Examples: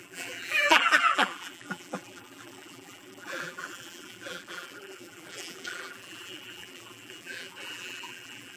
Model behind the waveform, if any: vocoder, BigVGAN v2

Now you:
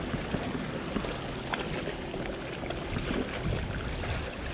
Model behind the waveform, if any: none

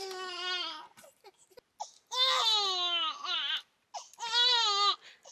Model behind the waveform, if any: none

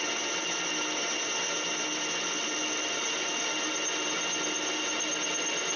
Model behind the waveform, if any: none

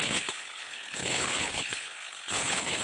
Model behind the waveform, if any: codec, HILCodec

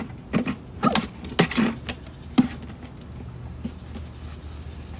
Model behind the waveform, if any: none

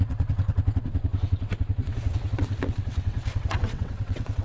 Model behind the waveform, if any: vocoder, WaveNeXt